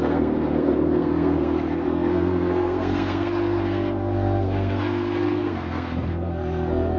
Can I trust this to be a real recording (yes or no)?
no